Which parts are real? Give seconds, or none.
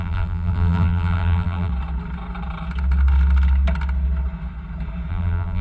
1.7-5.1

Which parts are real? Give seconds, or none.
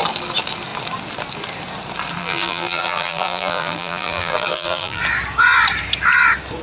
0.0-2.2; 5.0-6.6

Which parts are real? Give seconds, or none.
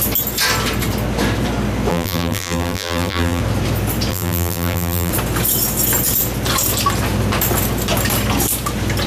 0.0-1.9; 3.4-4.1; 5.1-9.1